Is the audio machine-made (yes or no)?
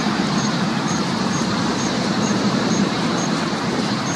yes